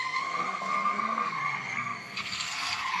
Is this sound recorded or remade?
remade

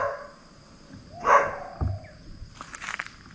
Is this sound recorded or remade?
recorded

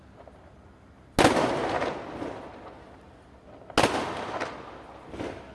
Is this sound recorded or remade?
recorded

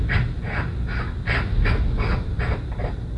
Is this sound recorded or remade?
recorded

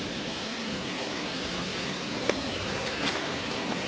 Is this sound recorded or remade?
remade